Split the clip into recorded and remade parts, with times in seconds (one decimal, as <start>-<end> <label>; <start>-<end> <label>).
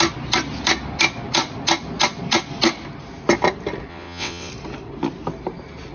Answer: 0.0-3.9 recorded; 3.9-4.5 remade; 4.5-5.9 recorded